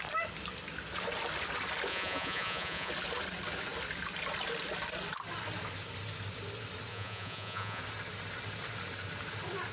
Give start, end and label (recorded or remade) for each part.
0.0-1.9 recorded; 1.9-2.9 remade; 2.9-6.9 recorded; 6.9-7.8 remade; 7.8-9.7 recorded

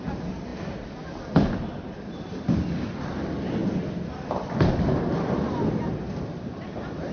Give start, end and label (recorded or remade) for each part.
0.0-7.1 recorded

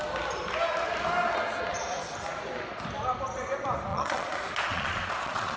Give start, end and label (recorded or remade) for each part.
0.0-3.9 recorded; 3.9-5.6 remade

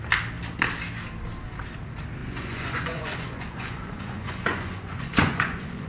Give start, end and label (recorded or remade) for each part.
0.0-2.2 recorded; 2.2-5.9 remade

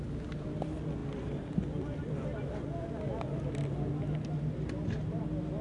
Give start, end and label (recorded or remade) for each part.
0.0-5.6 recorded